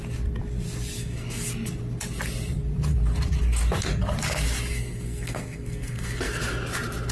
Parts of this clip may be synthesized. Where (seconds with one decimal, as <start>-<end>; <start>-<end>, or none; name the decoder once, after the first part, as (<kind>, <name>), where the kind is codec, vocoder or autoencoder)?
1.0-1.5 (codec, SNAC); 4.7-6.4